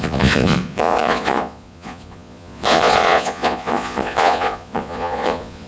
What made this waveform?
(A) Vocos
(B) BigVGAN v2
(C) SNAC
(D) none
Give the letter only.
A